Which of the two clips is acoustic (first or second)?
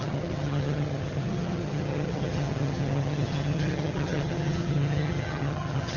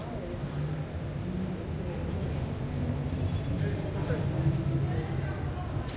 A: second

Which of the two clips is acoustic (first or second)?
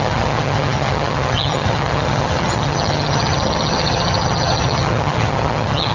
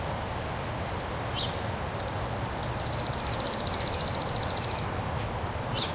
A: second